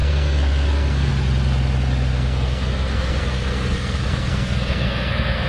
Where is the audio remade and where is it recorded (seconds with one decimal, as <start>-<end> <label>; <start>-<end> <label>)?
0.0-1.1 remade; 1.1-2.1 recorded; 2.1-5.5 remade